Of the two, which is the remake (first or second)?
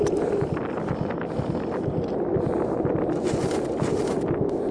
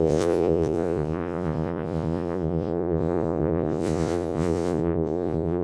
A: second